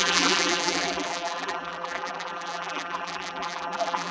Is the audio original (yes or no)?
no